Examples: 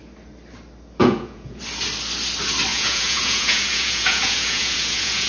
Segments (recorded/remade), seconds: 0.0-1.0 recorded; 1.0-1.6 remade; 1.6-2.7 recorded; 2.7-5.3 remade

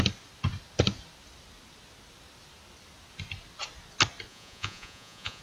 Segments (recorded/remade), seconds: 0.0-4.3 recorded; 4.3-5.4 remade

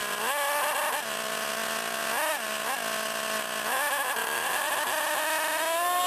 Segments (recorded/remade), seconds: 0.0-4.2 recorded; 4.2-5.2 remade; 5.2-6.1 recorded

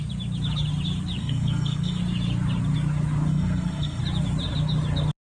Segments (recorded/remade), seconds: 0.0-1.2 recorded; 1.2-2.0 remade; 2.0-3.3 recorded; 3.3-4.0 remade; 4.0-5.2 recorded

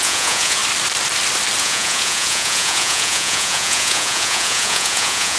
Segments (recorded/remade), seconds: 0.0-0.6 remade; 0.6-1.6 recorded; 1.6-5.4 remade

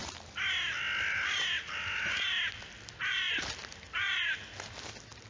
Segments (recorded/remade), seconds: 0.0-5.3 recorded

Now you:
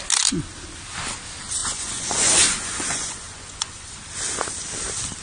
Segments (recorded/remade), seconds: 0.0-1.6 recorded; 1.6-3.9 remade; 3.9-5.2 recorded

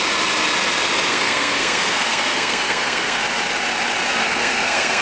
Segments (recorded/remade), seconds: 0.0-1.1 recorded; 1.1-3.2 remade; 3.2-4.2 recorded; 4.2-5.0 remade